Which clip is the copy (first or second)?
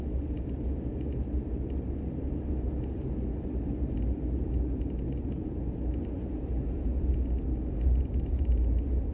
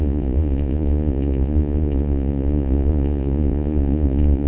second